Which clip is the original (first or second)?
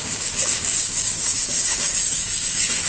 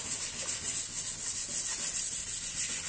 second